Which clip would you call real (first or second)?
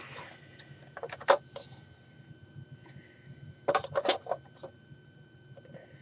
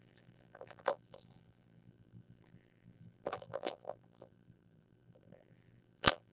first